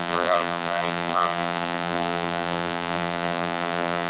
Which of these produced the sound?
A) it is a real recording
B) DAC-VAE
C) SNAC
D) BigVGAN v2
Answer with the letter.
D